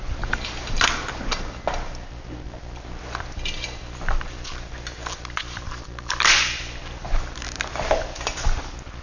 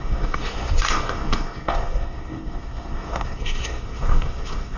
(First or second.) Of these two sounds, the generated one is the second